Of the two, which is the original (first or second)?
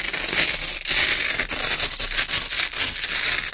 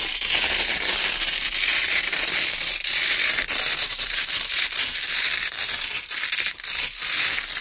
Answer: first